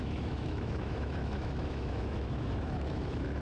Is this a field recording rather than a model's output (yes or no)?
no